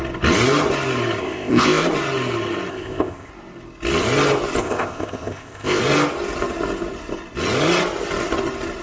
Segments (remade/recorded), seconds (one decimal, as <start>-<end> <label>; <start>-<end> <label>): 0.0-1.2 recorded; 1.2-1.9 remade; 1.9-2.7 recorded; 2.7-3.3 remade; 3.3-4.6 recorded; 4.6-5.8 remade; 5.8-8.8 recorded